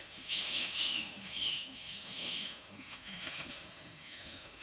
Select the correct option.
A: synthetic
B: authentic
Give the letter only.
A